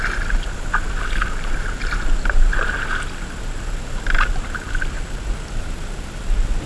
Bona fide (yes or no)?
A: yes